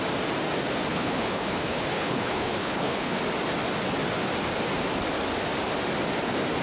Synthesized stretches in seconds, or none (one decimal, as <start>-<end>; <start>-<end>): 0.9-3.2